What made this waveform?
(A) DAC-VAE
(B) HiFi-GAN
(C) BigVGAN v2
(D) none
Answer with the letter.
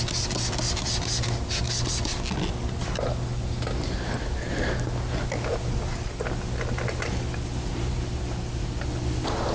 D